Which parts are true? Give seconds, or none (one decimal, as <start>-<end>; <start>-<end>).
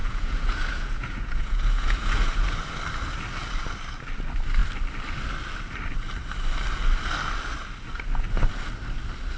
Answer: 2.8-9.4